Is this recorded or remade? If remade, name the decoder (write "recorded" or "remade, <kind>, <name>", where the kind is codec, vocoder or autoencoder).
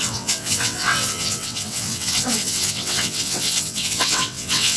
remade, vocoder, WaveNeXt